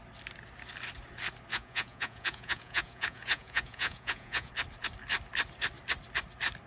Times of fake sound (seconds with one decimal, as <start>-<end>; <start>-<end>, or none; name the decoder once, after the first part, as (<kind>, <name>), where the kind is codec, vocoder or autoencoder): 1.5-4.5 (vocoder, Vocos)

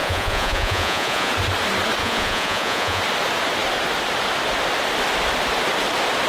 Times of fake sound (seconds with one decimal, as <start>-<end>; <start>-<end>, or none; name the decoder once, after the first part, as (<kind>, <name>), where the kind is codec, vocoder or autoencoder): 0.0-1.3 (vocoder, Vocos); 2.0-3.0